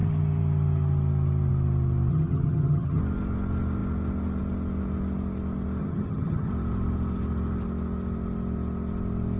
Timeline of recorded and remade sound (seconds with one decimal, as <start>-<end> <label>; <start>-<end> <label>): 0.0-2.1 recorded; 2.1-3.0 remade; 3.0-5.8 recorded; 5.8-6.5 remade; 6.5-9.4 recorded